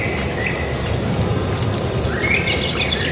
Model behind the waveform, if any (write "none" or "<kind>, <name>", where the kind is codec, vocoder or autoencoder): none